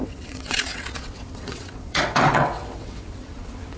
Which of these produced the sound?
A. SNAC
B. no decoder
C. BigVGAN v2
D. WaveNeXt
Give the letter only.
D